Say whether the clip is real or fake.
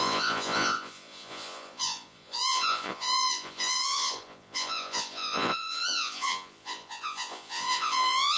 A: fake